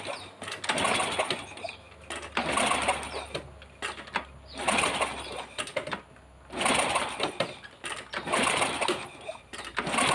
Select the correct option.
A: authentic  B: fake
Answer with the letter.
A